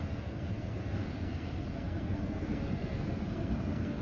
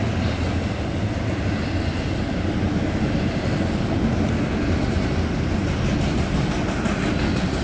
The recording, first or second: second